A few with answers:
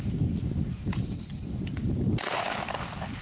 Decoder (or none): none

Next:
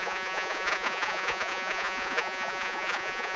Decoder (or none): vocoder, Vocos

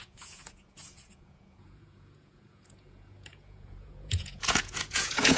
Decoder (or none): vocoder, Vocos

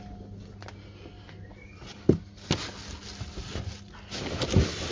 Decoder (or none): none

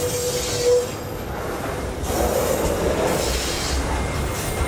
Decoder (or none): none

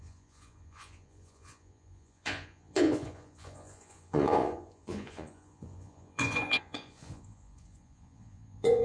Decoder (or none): vocoder, Vocos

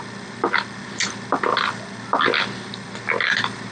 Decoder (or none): none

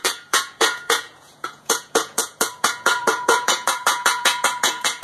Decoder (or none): vocoder, Vocos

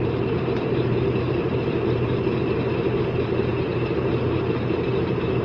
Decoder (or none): none